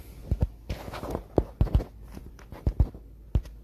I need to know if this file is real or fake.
real